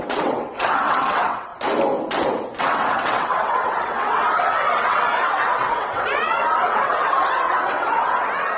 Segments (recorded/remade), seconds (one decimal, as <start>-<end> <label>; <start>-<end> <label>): 0.0-1.5 remade; 1.5-2.6 recorded; 2.6-8.6 remade